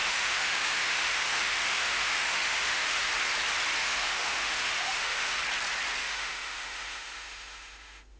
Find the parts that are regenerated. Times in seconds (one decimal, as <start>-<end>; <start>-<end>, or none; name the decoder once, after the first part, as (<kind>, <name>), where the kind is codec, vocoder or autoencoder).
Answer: 0.0-3.1 (autoencoder, DAC-VAE); 3.8-5.4; 6.0-8.2